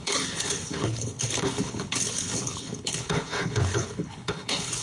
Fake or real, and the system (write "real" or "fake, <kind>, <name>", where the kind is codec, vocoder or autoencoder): fake, codec, HILCodec